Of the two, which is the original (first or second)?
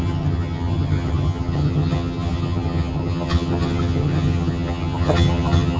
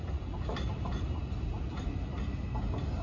second